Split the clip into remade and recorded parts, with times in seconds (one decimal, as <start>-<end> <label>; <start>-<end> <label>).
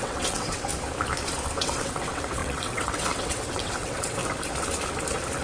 0.0-0.7 remade; 0.7-1.6 recorded; 1.6-4.2 remade; 4.2-5.4 recorded